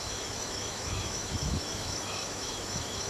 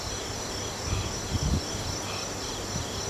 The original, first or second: second